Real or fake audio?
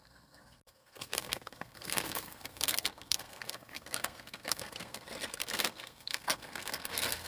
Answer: fake